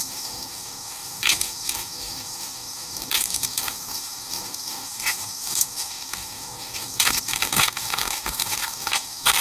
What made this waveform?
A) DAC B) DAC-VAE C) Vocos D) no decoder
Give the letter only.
A